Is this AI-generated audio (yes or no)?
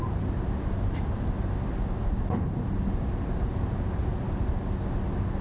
no